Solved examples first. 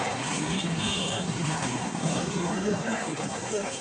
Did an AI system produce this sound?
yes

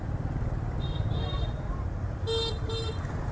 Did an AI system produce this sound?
no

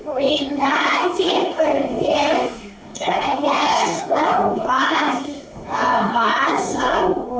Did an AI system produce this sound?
yes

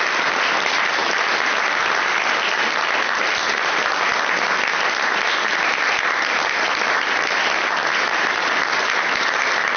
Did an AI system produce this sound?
no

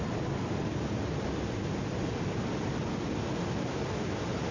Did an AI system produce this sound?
no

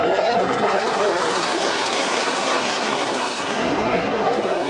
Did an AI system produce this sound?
yes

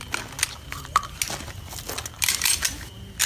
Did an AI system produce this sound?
no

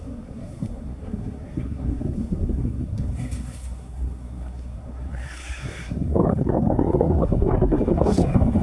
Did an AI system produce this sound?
yes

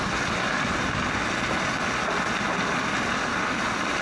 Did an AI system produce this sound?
no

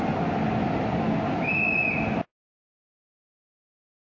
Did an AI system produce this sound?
no